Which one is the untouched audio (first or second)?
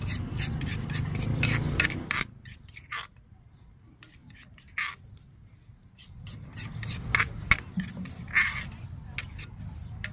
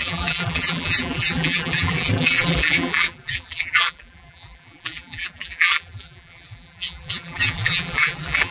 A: first